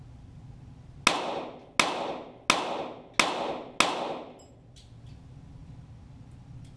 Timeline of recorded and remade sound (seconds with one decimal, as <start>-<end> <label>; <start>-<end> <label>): 0.0-6.8 recorded